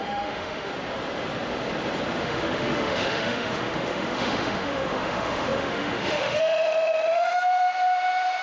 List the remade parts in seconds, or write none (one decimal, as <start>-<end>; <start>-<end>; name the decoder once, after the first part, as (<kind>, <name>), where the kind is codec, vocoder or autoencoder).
0.0-0.7 (autoencoder, DAC-VAE); 2.2-7.7